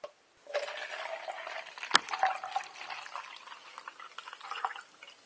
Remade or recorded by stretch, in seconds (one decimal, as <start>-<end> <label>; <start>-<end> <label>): 0.0-4.2 recorded; 4.2-4.8 remade; 4.8-5.3 recorded

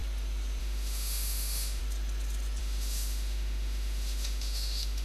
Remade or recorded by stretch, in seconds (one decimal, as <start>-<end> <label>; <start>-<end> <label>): 0.0-0.6 recorded; 0.6-1.8 remade; 1.8-2.6 recorded; 2.6-5.0 remade

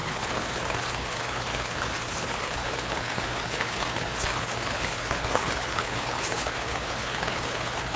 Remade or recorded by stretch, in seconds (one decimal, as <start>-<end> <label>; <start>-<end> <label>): 0.0-8.0 remade

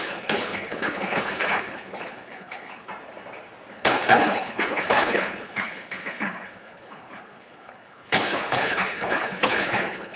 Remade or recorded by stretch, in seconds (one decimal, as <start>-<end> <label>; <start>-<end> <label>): 0.0-2.9 remade; 2.9-3.7 recorded; 3.7-10.2 remade